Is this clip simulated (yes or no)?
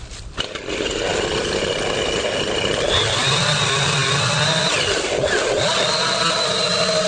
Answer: no